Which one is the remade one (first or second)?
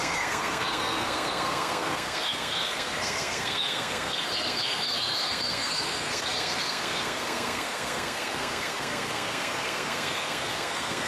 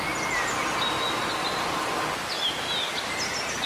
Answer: first